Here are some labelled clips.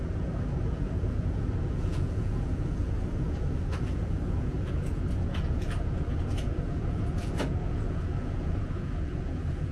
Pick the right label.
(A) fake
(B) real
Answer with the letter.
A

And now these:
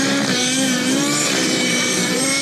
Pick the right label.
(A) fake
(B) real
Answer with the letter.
A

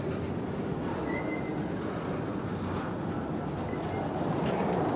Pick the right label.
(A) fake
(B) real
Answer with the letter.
B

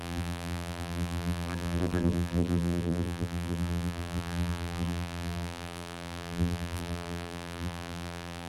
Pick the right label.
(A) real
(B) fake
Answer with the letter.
B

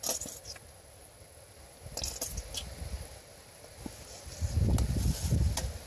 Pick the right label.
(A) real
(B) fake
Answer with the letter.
A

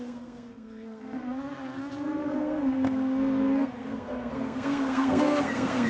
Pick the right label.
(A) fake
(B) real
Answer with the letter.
A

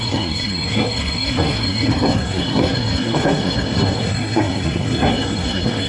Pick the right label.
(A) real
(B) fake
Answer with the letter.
B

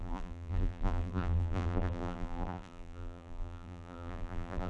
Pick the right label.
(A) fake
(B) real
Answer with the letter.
A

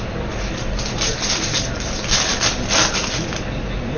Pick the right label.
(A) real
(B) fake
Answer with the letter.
B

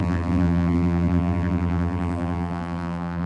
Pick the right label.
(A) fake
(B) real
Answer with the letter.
A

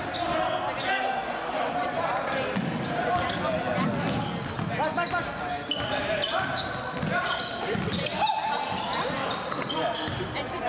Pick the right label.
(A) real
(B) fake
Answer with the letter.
A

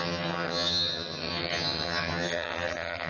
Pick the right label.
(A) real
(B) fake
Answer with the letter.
B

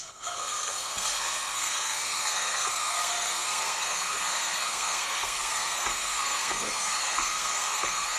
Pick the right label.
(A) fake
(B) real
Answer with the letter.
A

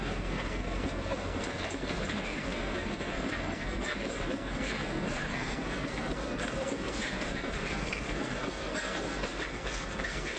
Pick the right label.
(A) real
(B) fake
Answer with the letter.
B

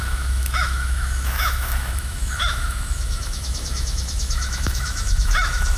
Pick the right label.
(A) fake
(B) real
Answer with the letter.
A